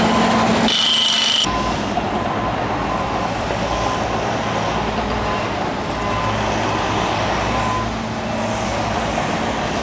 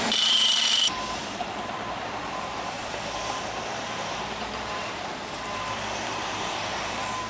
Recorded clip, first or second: first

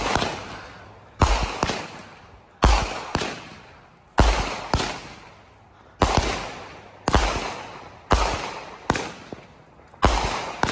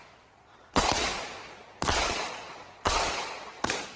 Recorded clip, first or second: first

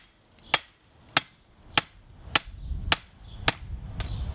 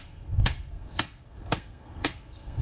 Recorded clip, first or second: first